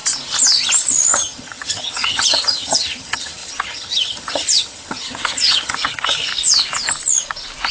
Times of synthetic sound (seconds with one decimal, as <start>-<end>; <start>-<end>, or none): 1.1-6.3